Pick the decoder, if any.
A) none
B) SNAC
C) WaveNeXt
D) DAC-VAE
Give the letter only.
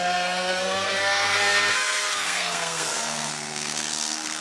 B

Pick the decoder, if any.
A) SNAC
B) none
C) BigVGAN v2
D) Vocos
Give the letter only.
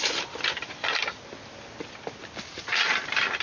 B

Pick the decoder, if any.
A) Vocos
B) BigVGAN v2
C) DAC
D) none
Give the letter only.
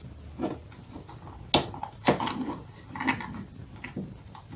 D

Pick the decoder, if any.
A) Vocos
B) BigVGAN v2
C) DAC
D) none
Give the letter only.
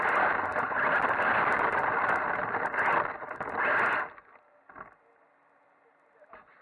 D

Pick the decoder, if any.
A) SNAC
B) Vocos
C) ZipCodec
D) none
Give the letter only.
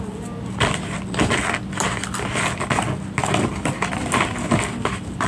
D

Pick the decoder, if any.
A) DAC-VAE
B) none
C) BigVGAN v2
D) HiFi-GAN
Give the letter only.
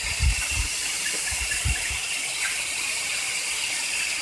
C